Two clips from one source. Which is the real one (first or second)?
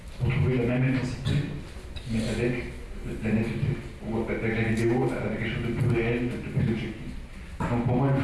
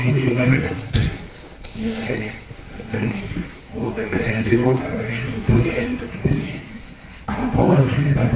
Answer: first